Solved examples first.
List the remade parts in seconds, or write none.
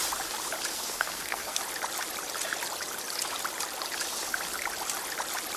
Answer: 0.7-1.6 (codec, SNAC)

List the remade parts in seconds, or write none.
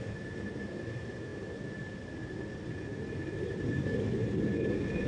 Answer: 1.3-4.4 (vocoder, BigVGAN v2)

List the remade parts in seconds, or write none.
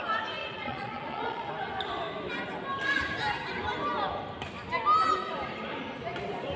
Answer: 0.4-1.5 (vocoder, Vocos)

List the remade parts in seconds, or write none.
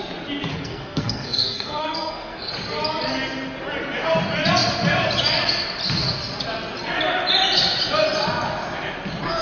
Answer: 0.5-2.5 (codec, SNAC)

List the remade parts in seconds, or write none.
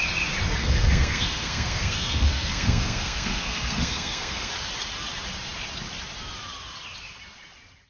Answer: 0.6-4.5 (codec, SNAC)